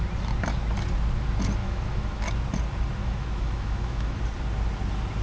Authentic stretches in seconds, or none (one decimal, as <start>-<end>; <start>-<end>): 0.0-1.6; 2.2-3.0; 4.2-5.2